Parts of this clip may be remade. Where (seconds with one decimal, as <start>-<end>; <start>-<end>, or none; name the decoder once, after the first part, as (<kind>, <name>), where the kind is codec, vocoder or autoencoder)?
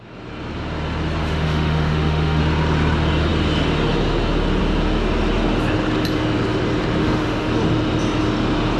1.2-2.4 (autoencoder, DAC-VAE); 7.0-7.5